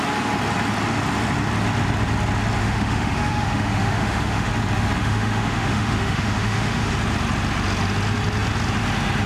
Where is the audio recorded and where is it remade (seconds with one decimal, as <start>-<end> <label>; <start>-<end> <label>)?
0.0-2.6 recorded; 2.6-4.5 remade; 4.5-5.0 recorded; 5.0-6.9 remade; 6.9-9.3 recorded